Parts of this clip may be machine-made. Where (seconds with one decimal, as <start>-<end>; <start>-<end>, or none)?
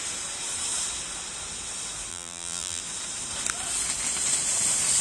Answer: 2.1-2.8